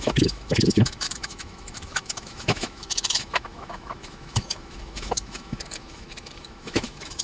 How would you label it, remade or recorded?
remade